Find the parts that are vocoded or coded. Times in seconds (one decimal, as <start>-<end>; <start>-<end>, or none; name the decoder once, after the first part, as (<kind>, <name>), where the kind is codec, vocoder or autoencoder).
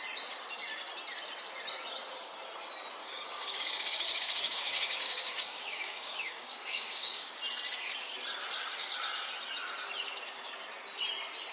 3.0-7.3 (codec, DAC)